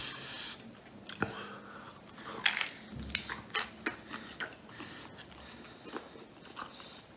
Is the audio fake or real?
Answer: real